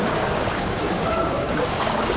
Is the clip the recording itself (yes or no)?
no